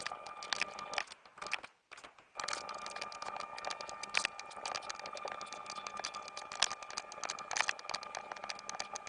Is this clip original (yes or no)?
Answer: yes